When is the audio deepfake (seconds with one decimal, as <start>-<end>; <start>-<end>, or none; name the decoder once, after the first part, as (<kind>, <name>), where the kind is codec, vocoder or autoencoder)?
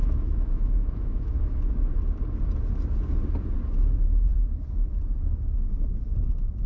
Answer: 0.0-1.6 (autoencoder, DAC-VAE)